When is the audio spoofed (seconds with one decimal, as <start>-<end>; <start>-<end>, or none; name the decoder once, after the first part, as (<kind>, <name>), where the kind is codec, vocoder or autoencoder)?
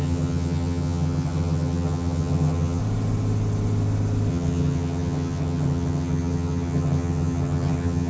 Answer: 0.0-2.8 (vocoder, HiFi-GAN); 4.3-8.1